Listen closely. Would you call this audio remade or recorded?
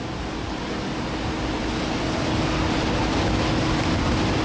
recorded